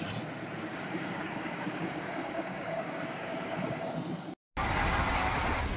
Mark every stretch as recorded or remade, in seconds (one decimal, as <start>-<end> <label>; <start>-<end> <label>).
0.0-0.7 recorded; 0.7-3.9 remade; 3.9-5.8 recorded